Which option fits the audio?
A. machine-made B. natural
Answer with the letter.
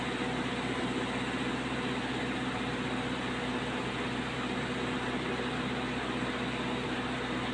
B